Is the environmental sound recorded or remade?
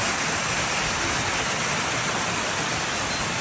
recorded